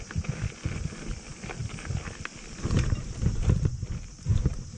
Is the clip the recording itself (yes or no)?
yes